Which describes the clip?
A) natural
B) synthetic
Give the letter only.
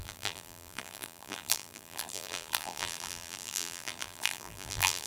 B